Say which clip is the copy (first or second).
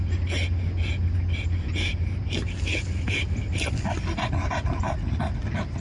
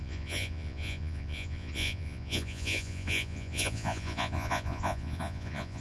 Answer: second